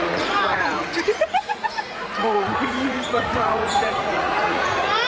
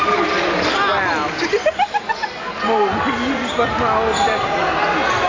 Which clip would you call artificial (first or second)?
first